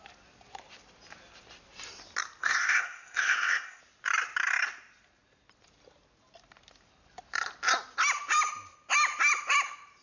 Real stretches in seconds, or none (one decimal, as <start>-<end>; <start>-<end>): 0.0-2.4; 3.8-10.0